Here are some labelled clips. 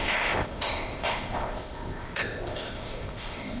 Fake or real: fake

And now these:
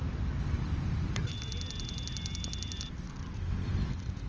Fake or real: real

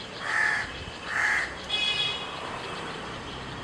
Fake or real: fake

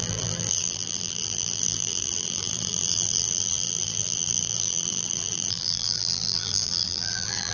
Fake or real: fake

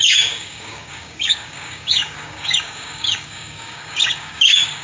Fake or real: fake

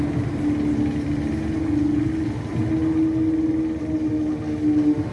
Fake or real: real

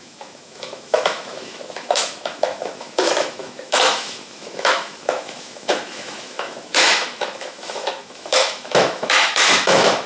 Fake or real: fake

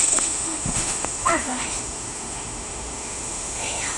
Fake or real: fake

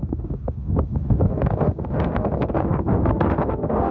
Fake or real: fake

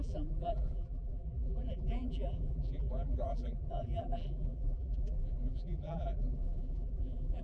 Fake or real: fake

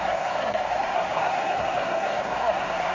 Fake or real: fake